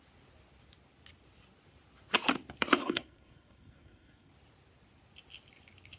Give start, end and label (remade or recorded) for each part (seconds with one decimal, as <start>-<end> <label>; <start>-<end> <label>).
0.0-2.8 recorded; 2.8-4.3 remade; 4.3-6.0 recorded